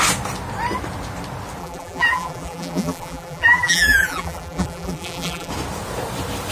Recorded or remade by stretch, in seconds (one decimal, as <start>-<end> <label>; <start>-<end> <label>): 0.0-1.6 recorded; 1.6-5.5 remade; 5.5-6.5 recorded